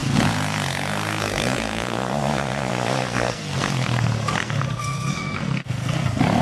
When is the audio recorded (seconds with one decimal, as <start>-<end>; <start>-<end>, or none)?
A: none